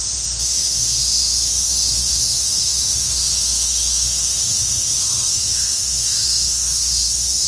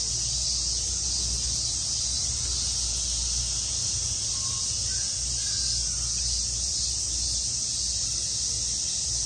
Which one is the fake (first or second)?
first